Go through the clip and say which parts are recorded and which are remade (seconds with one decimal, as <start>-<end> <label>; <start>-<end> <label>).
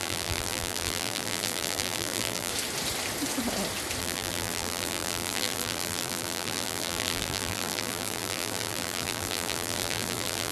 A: 0.0-2.5 remade; 2.5-4.0 recorded; 4.0-10.5 remade